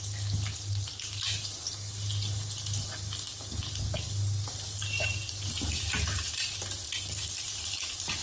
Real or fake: real